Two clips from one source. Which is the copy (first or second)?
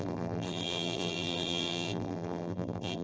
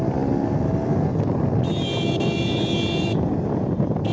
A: first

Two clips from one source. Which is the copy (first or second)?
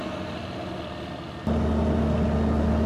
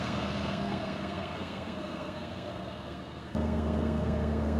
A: second